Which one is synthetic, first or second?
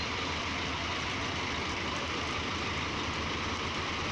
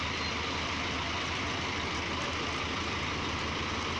first